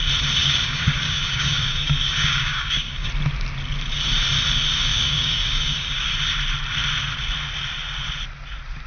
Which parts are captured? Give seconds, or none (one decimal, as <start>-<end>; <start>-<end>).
0.0-0.4; 3.1-4.9; 6.1-8.9